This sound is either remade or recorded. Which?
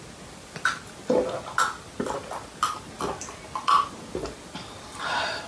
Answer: recorded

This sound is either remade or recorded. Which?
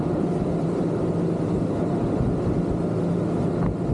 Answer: recorded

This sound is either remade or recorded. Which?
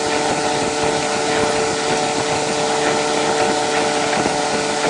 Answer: recorded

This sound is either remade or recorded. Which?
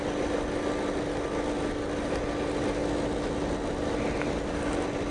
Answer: recorded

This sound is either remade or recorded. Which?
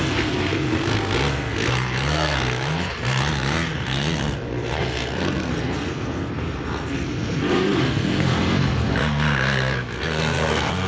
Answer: remade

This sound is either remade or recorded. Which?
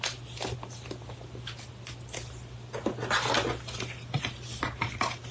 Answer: recorded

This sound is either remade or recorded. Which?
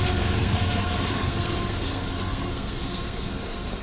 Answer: remade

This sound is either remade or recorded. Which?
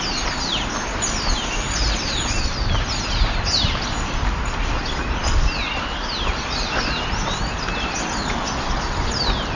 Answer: recorded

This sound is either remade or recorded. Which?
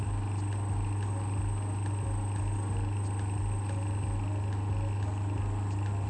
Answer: recorded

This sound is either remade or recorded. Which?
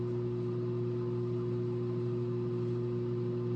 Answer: recorded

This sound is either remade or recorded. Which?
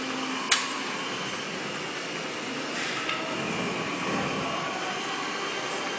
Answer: recorded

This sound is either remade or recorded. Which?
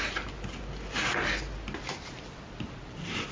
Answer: recorded